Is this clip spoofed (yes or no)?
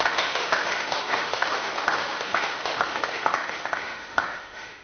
yes